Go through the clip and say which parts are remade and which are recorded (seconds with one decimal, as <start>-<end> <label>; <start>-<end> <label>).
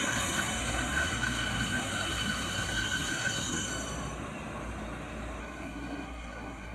0.0-3.7 remade; 3.7-5.4 recorded; 5.4-6.7 remade